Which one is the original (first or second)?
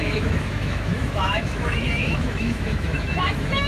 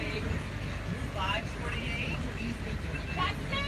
second